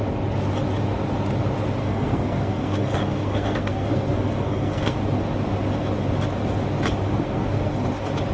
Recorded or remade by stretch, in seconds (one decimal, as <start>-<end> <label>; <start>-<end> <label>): 0.0-1.8 recorded; 1.8-5.0 remade; 5.0-7.1 recorded; 7.1-7.7 remade; 7.7-8.3 recorded